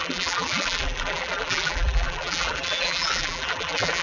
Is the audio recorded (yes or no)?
no